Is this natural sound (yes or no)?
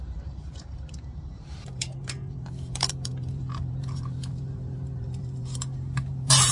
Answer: no